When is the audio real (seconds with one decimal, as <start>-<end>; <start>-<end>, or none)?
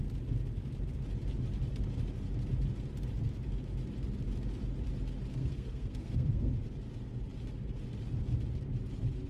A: 0.0-5.3; 6.5-9.3